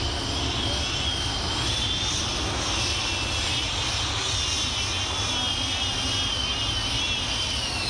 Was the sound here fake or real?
real